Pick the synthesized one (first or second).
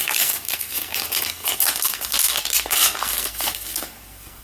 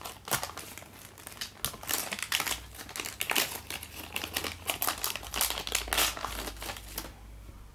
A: first